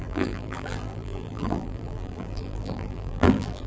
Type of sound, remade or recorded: remade